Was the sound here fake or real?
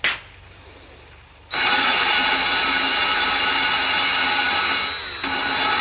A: real